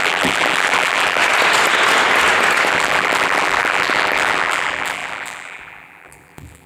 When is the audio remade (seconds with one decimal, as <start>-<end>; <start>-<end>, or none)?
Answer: 0.0-1.2; 2.7-6.7